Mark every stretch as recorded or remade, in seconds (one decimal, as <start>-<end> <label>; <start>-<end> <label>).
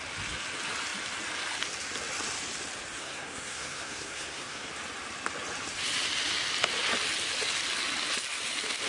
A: 0.0-3.0 recorded; 3.0-4.7 remade; 4.7-8.9 recorded